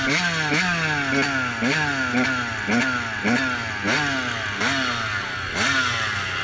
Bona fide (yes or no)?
yes